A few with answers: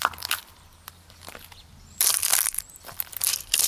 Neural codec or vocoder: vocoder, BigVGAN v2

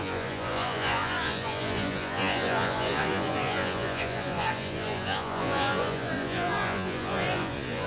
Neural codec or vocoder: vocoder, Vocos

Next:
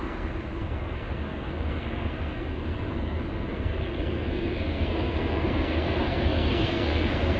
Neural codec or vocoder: codec, SNAC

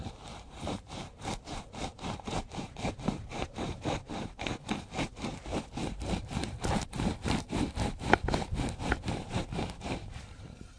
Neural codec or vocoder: vocoder, BigVGAN v2